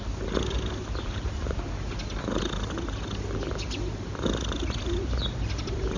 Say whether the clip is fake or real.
real